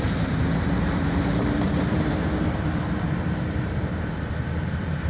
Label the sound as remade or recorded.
remade